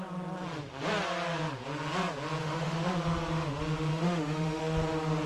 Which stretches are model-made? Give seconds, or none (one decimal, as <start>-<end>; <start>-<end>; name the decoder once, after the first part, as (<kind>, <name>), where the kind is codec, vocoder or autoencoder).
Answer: 2.4-2.9 (autoencoder, DAC-VAE); 3.9-4.6